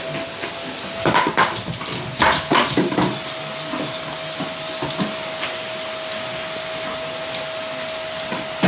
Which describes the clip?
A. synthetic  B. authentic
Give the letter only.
B